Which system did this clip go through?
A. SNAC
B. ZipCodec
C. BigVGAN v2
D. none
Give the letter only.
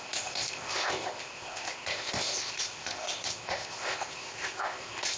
B